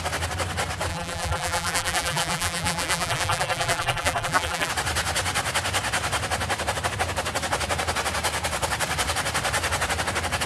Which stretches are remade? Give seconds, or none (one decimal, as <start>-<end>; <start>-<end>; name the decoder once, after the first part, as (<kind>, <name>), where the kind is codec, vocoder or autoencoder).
0.9-4.7 (vocoder, BigVGAN v2)